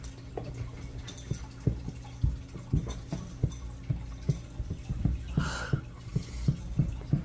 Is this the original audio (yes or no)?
yes